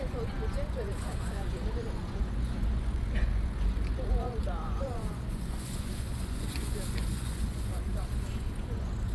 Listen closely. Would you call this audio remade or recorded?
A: remade